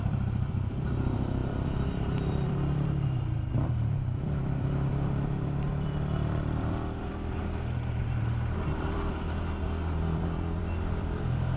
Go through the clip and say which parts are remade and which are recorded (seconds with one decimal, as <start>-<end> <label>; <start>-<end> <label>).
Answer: 0.0-7.4 remade; 7.4-8.0 recorded; 8.0-11.6 remade